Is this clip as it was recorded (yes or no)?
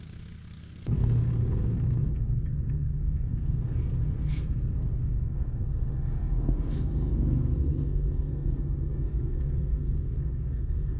no